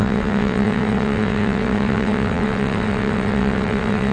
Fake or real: fake